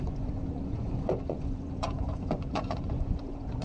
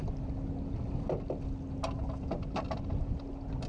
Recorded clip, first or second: second